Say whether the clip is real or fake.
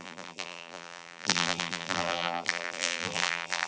fake